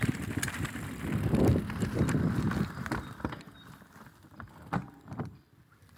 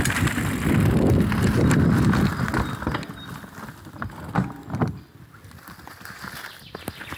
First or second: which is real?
second